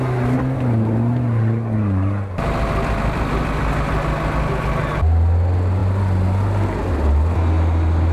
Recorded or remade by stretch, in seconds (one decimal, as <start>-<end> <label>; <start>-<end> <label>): 0.0-8.1 recorded